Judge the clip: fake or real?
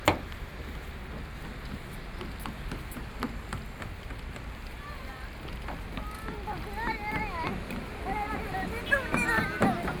real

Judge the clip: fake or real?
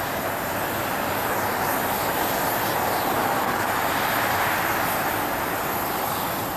real